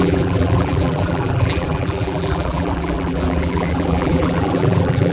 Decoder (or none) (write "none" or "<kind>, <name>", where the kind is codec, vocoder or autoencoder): vocoder, BigVGAN v2